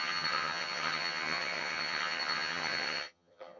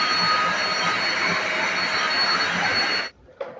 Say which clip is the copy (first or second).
first